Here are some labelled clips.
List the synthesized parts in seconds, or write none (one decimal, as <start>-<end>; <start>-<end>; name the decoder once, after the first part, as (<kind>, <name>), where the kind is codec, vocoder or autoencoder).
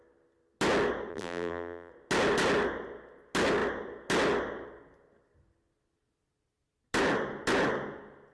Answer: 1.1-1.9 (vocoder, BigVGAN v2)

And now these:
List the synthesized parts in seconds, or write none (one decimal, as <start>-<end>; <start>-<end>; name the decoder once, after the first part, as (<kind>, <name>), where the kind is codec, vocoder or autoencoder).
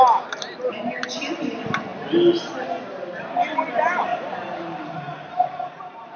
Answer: 4.1-5.8 (vocoder, BigVGAN v2)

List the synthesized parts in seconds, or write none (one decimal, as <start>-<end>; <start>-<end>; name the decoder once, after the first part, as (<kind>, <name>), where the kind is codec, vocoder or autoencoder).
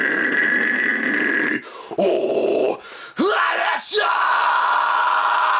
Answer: none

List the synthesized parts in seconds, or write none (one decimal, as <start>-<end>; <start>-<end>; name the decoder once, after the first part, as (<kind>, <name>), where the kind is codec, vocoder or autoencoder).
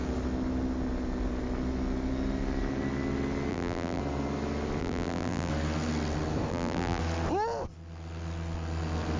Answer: 3.5-4.0 (vocoder, BigVGAN v2); 4.8-5.5; 6.5-7.0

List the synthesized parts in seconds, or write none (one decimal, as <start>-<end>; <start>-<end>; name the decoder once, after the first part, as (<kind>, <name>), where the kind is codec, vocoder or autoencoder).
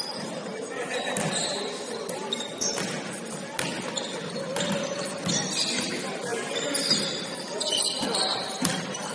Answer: 0.0-0.5 (vocoder, BigVGAN v2); 1.8-2.2; 5.3-9.1